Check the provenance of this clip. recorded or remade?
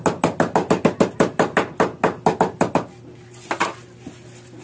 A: recorded